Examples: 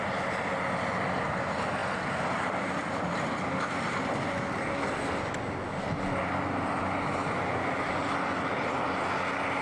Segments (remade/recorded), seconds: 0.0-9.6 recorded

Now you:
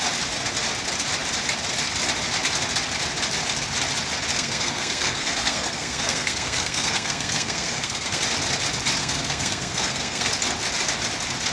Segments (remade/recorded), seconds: 0.0-4.3 recorded; 4.3-8.2 remade; 8.2-9.0 recorded; 9.0-10.3 remade; 10.3-11.5 recorded

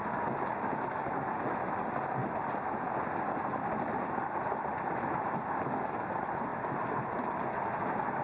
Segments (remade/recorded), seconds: 0.0-8.2 recorded

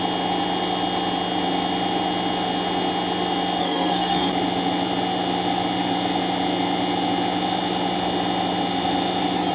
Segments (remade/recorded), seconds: 0.0-3.6 recorded; 3.6-4.3 remade; 4.3-9.5 recorded

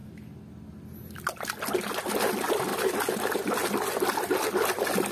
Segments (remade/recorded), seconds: 0.0-5.1 recorded

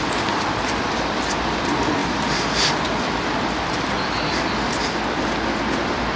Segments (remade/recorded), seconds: 0.0-6.2 recorded